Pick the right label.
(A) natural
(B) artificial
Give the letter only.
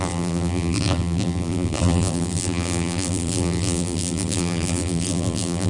B